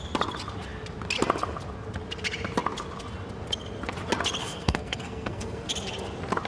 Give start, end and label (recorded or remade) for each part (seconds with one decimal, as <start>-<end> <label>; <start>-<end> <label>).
0.0-4.4 recorded; 4.4-5.7 remade; 5.7-6.5 recorded